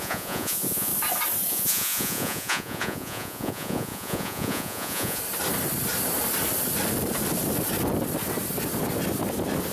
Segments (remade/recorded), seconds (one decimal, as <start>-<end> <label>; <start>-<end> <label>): 0.0-0.9 remade; 0.9-1.5 recorded; 1.5-5.2 remade; 5.2-9.7 recorded

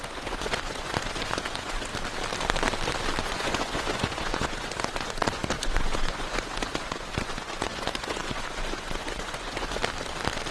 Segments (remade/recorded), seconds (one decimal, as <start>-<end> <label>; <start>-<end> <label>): 0.0-1.9 remade; 1.9-3.2 recorded; 3.2-9.8 remade; 9.8-10.5 recorded